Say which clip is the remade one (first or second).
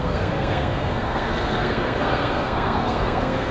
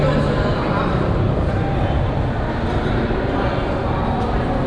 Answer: first